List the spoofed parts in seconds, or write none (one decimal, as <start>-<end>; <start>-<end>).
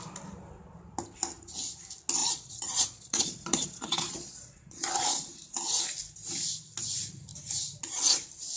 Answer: 2.2-4.9